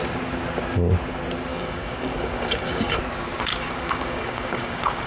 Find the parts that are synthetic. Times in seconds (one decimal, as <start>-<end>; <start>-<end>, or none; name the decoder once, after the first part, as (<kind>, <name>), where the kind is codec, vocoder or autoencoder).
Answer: 1.5-3.0 (codec, DAC); 3.5-5.1